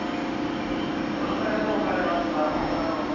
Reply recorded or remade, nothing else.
recorded